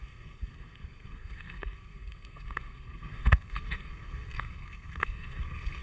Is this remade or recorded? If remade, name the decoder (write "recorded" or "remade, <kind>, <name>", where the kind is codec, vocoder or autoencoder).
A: remade, codec, SNAC